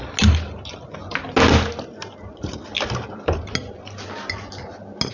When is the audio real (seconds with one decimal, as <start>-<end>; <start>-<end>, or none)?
0.0-5.1